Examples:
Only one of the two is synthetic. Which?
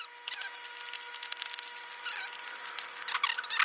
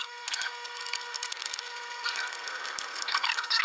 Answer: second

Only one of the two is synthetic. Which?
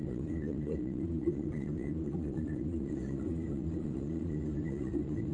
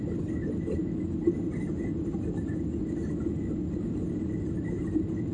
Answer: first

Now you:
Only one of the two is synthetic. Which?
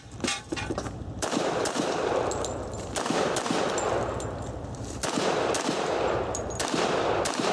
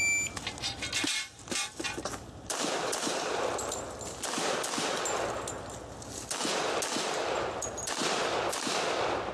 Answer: first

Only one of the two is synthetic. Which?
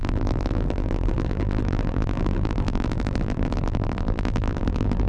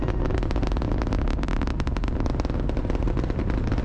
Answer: first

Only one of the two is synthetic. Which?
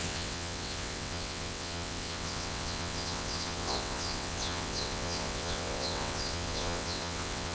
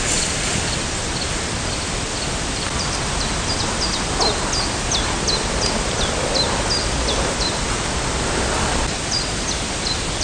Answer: first